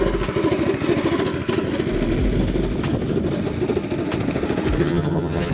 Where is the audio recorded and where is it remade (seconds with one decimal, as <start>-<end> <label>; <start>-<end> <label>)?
0.0-4.8 recorded; 4.8-5.5 remade